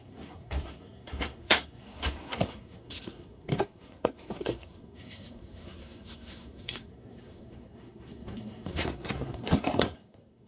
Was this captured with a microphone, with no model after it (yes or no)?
no